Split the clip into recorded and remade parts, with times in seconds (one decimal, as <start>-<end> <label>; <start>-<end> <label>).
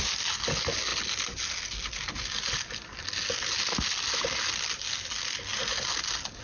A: 0.0-6.4 recorded